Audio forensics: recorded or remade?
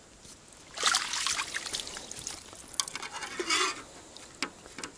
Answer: recorded